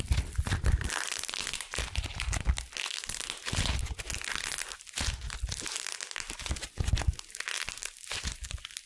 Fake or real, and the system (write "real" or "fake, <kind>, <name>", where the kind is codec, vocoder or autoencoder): real